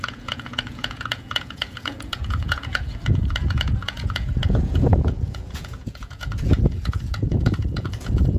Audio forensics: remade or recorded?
remade